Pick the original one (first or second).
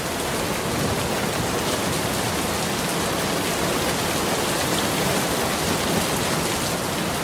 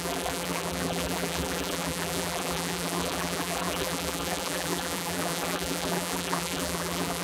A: first